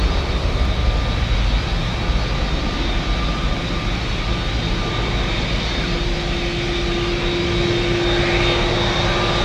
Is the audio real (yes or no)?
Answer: yes